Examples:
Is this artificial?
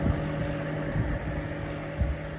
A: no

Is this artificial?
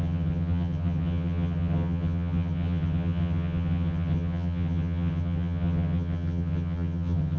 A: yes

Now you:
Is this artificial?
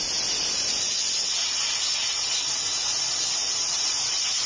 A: no